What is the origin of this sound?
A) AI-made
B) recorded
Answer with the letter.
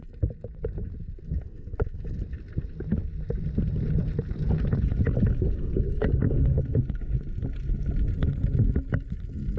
B